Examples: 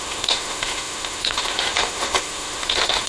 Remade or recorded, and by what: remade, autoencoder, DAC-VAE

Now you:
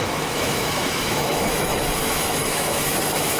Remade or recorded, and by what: remade, autoencoder, DAC-VAE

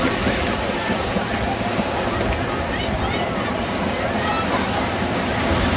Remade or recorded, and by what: recorded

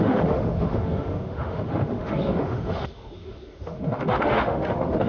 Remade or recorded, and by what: remade, autoencoder, DAC-VAE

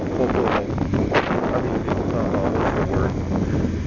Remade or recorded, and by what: recorded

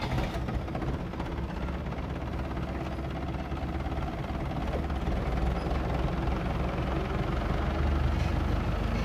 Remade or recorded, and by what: recorded